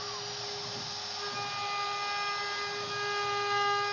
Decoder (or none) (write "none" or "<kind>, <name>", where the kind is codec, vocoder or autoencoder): none